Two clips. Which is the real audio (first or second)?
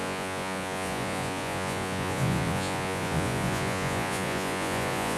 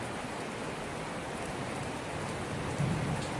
second